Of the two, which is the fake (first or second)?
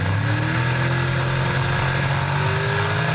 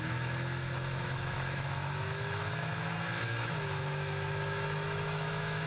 second